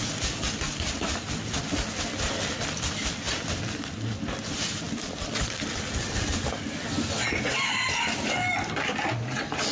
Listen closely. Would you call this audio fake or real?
real